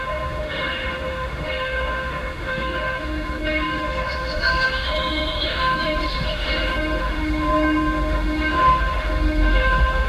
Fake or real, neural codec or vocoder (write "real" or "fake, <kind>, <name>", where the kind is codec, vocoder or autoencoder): fake, autoencoder, DAC-VAE